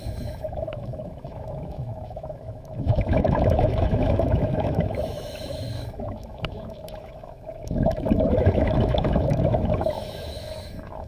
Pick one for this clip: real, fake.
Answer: fake